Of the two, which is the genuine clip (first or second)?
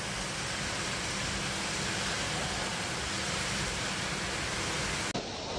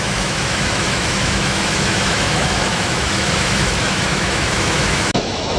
first